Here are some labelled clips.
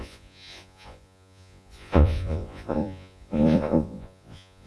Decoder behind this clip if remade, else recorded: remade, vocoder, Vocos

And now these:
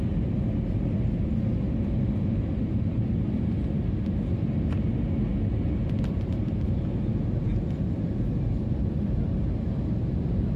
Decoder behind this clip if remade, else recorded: recorded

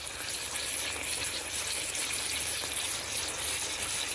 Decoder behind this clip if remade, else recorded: recorded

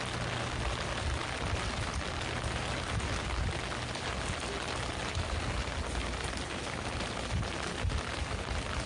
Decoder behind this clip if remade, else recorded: recorded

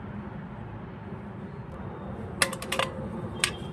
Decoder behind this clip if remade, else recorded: recorded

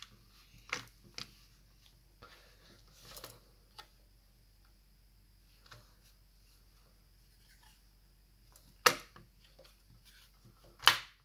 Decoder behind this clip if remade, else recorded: recorded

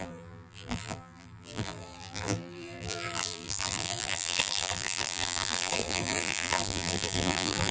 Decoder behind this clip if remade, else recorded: remade, vocoder, BigVGAN v2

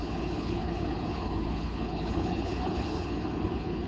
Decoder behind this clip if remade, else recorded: remade, codec, HILCodec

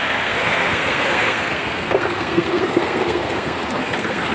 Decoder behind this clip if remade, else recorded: remade, codec, SNAC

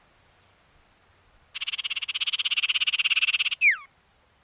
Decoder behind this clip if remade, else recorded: recorded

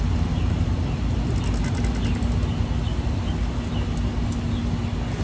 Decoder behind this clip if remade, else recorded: recorded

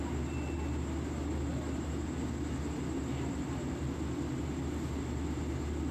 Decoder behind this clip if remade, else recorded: recorded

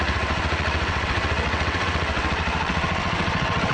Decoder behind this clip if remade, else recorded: remade, vocoder, WaveNeXt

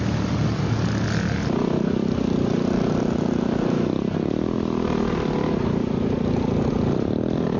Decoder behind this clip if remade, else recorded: recorded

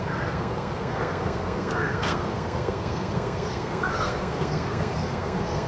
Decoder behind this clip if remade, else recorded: remade, codec, SNAC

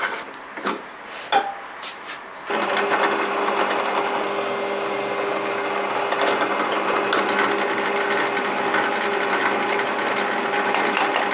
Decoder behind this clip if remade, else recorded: recorded